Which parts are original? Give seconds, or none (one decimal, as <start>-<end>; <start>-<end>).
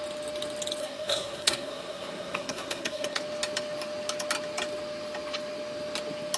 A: 0.0-0.8; 3.2-6.4